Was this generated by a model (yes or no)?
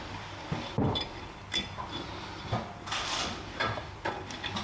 no